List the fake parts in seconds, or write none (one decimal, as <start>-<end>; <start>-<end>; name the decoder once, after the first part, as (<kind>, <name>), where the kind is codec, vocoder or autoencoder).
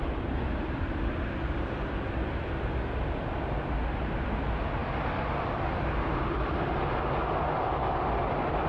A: none